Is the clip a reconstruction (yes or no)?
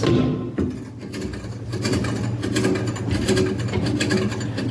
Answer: no